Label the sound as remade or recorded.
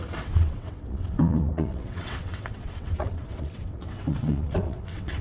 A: remade